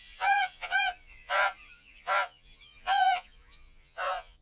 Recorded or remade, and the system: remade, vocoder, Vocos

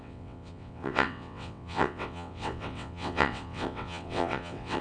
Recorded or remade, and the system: remade, vocoder, WaveNeXt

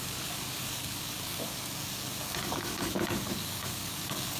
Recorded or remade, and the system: remade, codec, DAC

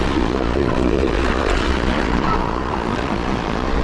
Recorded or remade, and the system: remade, vocoder, Vocos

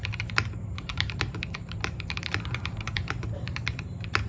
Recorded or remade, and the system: remade, vocoder, BigVGAN v2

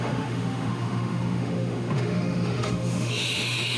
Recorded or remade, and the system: remade, autoencoder, DAC-VAE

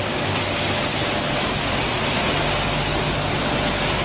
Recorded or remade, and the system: recorded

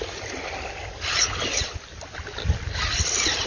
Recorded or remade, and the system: recorded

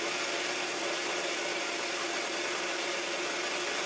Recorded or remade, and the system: recorded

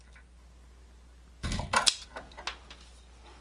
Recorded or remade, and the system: recorded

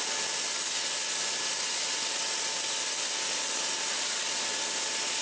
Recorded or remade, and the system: recorded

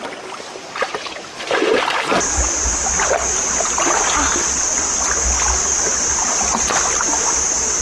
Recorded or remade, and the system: recorded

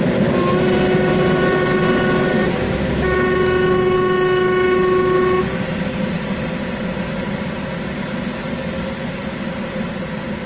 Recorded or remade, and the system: recorded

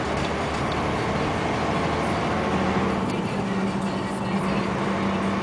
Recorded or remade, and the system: recorded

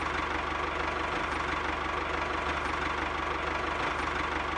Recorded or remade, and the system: recorded